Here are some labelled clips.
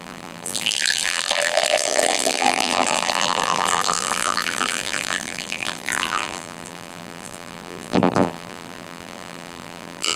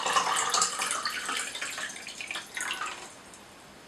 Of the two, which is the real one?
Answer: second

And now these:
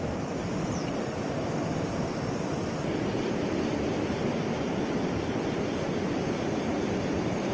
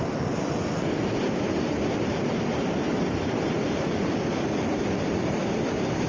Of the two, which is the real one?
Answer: second